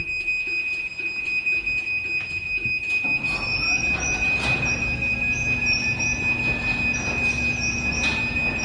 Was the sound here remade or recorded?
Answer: recorded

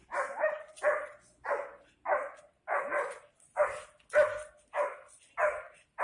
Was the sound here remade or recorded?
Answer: recorded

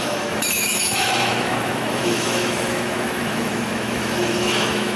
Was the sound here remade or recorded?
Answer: remade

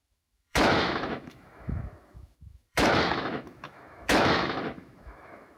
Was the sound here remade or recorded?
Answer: remade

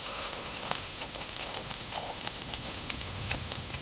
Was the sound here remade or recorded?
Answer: remade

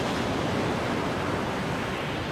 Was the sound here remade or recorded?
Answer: recorded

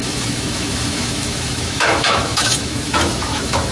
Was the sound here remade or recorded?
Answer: remade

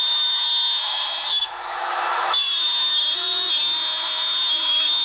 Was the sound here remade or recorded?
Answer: remade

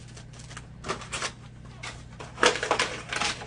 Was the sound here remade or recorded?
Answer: recorded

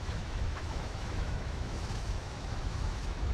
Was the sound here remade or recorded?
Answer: remade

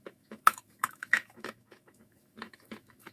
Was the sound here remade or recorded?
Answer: remade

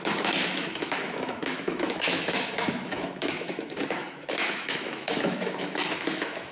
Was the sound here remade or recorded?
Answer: remade